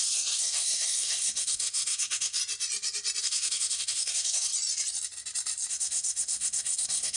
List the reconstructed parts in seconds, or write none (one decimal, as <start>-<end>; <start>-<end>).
0.0-2.4; 3.2-4.5; 5.7-7.2